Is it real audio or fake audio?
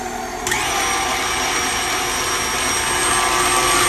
real